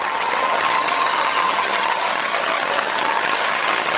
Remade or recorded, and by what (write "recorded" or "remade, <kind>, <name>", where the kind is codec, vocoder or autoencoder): remade, vocoder, HiFi-GAN